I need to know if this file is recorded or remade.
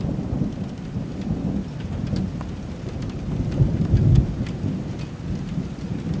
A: recorded